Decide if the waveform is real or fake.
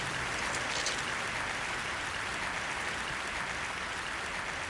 real